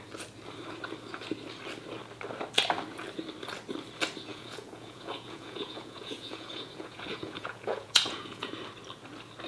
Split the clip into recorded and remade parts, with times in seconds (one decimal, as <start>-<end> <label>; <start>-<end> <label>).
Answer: 0.0-4.3 recorded; 4.3-8.5 remade; 8.5-9.5 recorded